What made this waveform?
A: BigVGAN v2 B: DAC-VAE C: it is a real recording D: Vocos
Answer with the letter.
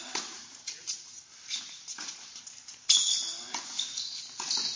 C